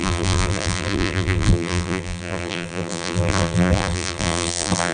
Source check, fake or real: fake